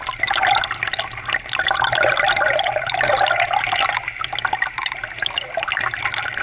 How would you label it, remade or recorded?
recorded